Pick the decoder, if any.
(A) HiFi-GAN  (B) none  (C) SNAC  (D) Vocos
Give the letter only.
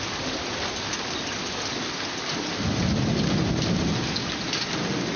B